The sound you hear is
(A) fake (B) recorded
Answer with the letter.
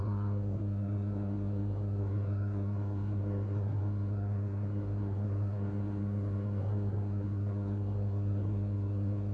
A